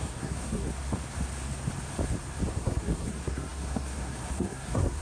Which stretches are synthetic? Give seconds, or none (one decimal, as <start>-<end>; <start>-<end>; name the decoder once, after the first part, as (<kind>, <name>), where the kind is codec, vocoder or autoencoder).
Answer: 0.0-0.7 (codec, SNAC); 2.5-5.0